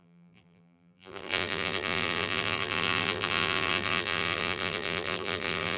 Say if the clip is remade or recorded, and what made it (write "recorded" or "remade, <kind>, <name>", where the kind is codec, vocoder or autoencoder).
remade, vocoder, BigVGAN v2